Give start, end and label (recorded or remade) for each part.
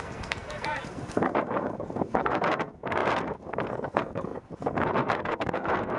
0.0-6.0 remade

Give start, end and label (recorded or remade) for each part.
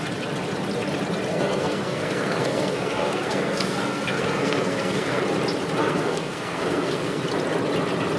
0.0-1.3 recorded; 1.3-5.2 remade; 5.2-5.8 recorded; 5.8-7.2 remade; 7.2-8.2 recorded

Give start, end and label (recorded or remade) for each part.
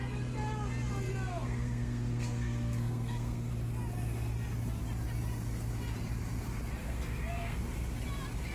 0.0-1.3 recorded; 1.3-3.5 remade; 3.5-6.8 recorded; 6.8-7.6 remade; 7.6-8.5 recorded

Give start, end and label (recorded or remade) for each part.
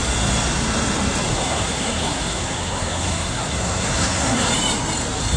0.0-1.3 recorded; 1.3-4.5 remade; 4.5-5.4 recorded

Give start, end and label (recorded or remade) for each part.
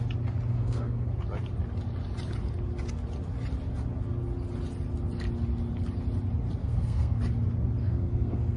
0.0-0.5 recorded; 0.5-1.1 remade; 1.1-6.6 recorded; 6.6-7.2 remade; 7.2-7.8 recorded; 7.8-8.6 remade